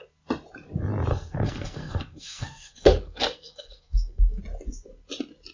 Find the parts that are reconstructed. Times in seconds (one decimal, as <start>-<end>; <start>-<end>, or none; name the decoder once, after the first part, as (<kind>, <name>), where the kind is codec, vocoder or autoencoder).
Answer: 1.1-4.4 (codec, SNAC)